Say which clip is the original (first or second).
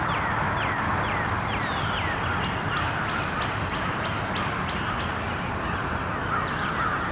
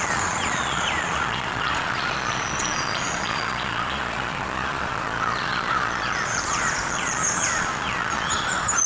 first